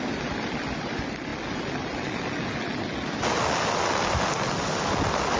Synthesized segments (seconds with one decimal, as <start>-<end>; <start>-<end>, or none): none